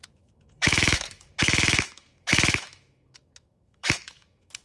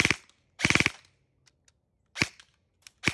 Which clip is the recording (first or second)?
second